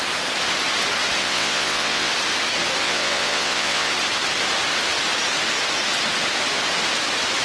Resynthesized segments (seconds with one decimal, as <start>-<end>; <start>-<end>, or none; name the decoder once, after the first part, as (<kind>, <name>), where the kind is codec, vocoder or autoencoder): 1.2-2.1 (vocoder, WaveNeXt); 2.8-3.9